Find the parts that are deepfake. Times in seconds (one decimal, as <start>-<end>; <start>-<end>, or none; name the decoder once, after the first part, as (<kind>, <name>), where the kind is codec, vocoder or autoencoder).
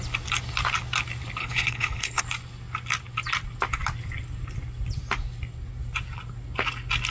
1.4-2.2 (codec, HILCodec)